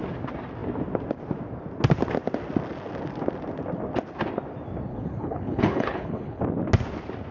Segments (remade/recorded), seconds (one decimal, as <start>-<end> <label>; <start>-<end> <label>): 0.0-4.9 recorded; 4.9-6.4 remade; 6.4-7.3 recorded